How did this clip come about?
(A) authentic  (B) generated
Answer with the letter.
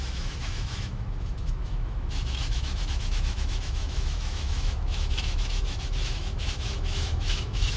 B